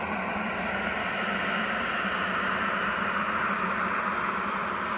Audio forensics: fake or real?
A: real